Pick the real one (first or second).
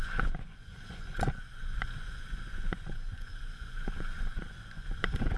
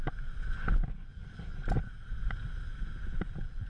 second